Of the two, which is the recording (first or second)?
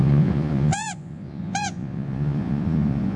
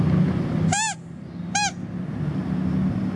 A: second